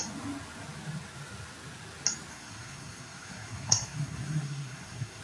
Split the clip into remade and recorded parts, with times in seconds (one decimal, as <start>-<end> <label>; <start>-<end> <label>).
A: 0.0-2.3 recorded; 2.3-5.2 remade